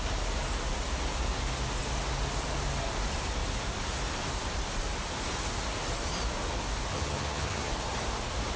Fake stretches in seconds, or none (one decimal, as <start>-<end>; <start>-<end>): 6.9-7.7